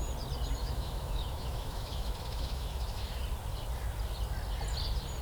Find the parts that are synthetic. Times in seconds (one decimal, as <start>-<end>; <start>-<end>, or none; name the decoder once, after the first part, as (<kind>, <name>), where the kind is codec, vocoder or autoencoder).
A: 0.6-3.2 (autoencoder, DAC-VAE)